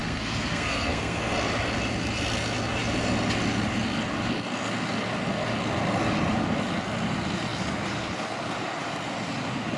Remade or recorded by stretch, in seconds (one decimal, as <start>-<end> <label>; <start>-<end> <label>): 0.0-1.3 remade; 1.3-9.8 recorded